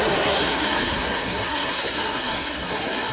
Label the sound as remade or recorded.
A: remade